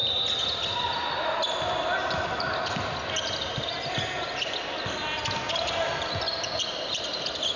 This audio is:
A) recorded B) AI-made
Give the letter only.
A